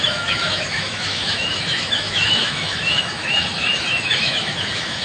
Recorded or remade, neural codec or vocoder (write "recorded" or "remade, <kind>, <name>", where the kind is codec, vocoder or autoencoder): remade, autoencoder, DAC-VAE